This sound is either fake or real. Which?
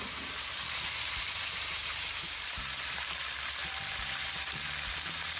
fake